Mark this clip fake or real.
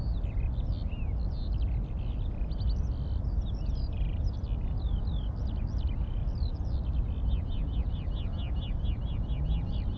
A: real